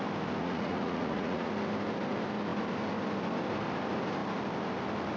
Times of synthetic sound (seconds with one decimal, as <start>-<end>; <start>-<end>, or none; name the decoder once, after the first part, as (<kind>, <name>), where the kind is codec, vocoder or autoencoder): 0.4-1.5 (vocoder, Vocos)